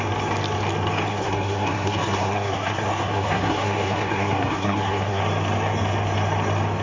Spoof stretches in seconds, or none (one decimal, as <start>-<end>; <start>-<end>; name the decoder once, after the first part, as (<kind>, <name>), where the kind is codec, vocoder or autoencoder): 1.1-5.2 (codec, SNAC)

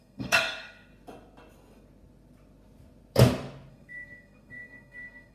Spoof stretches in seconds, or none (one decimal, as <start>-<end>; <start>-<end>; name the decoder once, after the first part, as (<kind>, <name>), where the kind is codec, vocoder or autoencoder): 0.0-0.9 (codec, SNAC); 3.7-5.3